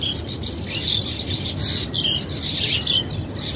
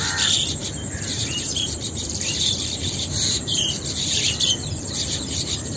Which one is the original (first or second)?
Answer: first